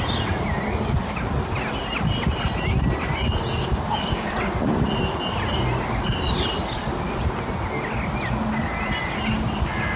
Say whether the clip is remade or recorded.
recorded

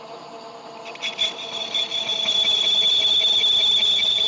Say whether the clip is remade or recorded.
recorded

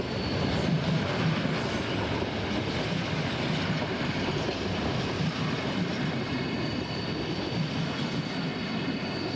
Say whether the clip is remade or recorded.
recorded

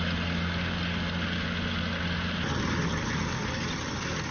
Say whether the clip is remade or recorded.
recorded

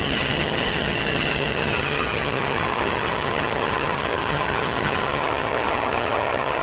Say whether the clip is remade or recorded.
remade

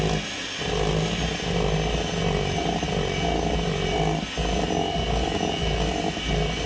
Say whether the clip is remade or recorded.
recorded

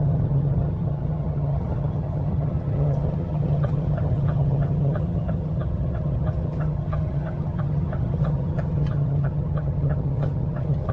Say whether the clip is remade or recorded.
remade